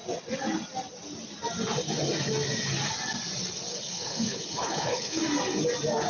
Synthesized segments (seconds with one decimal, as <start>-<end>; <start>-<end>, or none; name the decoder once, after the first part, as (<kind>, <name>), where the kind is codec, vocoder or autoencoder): 3.7-5.2 (codec, HILCodec)